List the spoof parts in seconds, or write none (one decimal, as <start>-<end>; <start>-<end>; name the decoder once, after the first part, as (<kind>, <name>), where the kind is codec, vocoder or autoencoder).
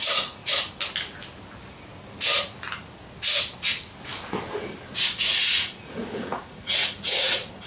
0.0-0.4 (vocoder, Vocos); 5.0-7.7